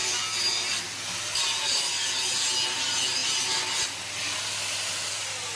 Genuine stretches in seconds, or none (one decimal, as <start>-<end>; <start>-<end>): 0.0-5.6